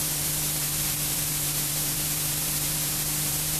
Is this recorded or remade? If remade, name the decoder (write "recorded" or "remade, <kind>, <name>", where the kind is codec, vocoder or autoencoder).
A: remade, vocoder, BigVGAN v2